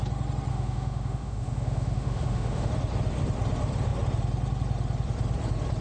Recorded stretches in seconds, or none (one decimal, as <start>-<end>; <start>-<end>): 0.0-0.5; 2.7-5.8